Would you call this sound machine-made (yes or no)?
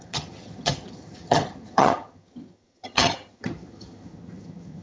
yes